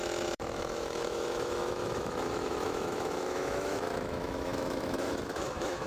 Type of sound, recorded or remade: remade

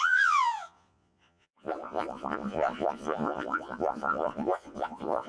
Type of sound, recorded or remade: remade